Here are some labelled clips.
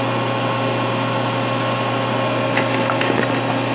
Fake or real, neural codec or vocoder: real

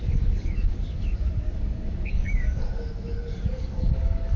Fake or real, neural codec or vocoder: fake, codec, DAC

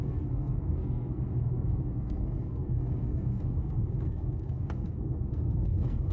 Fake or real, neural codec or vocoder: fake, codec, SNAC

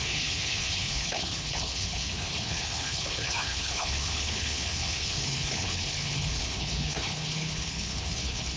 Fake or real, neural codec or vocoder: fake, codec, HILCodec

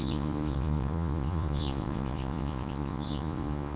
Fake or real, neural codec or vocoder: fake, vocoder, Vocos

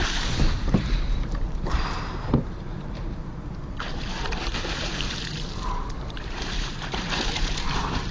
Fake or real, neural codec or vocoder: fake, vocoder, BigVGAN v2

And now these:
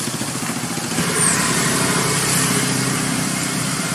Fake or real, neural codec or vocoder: fake, vocoder, BigVGAN v2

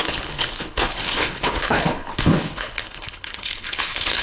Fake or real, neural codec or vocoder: fake, codec, HILCodec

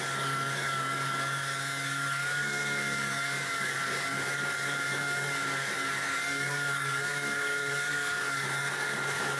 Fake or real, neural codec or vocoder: fake, codec, DAC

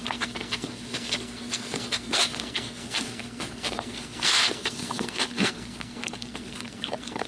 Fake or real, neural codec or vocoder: fake, codec, SNAC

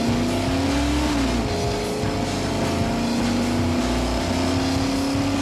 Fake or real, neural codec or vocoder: real